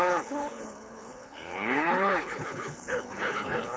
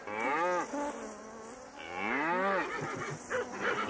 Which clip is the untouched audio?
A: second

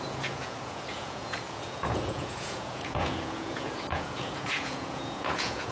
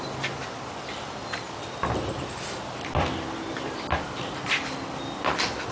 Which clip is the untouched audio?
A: second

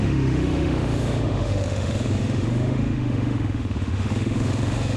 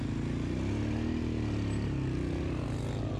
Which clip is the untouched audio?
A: second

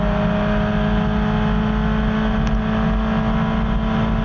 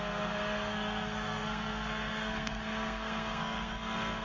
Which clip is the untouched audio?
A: first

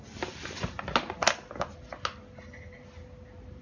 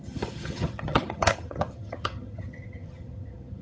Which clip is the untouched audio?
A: first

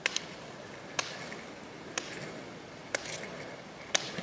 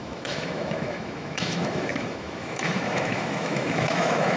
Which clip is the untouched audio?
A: first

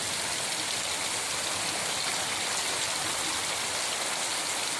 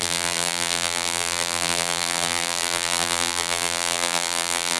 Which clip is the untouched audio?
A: first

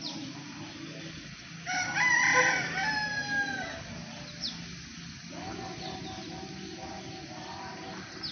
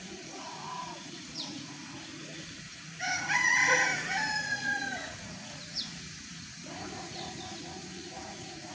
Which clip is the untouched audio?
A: first